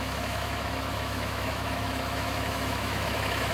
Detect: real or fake fake